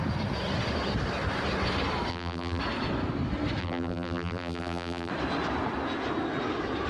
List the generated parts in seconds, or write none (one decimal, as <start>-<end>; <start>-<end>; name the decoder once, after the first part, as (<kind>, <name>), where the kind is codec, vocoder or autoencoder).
2.1-2.6 (vocoder, BigVGAN v2); 3.6-5.1